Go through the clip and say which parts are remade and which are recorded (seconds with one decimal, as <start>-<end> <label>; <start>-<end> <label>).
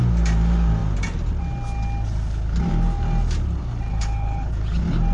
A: 0.0-3.9 recorded; 3.9-4.5 remade; 4.5-5.1 recorded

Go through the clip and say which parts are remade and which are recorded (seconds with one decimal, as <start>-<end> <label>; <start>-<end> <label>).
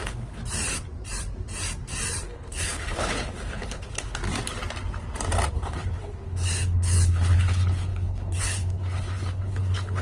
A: 0.0-0.4 remade; 0.4-2.2 recorded; 2.2-4.2 remade; 4.2-5.5 recorded; 5.5-10.0 remade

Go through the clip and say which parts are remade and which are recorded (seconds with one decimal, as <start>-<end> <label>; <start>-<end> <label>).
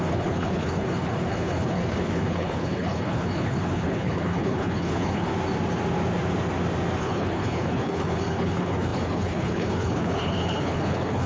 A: 0.0-5.3 remade; 5.3-7.0 recorded; 7.0-11.3 remade